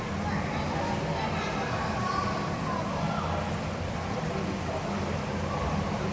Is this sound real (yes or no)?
yes